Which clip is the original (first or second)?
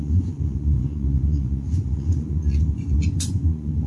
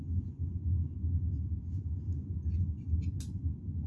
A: second